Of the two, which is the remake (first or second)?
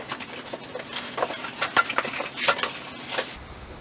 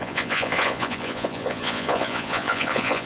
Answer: second